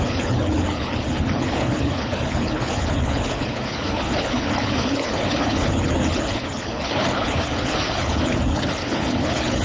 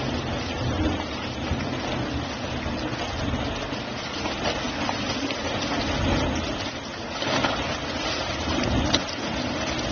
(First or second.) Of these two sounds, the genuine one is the second